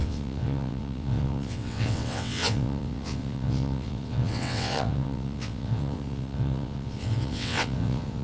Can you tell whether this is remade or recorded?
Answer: remade